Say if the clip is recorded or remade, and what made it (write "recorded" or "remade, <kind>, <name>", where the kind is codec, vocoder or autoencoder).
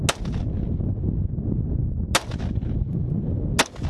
recorded